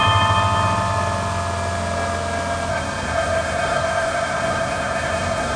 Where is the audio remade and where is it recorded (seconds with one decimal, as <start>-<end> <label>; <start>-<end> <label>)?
0.0-2.7 recorded; 2.7-5.6 remade